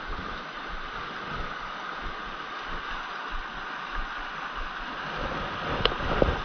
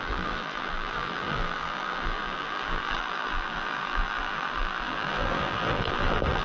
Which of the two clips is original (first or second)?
first